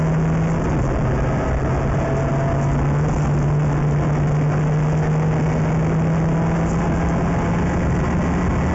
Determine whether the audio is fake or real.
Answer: real